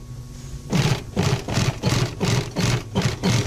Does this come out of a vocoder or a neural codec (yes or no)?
no